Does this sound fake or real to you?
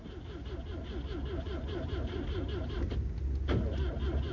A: real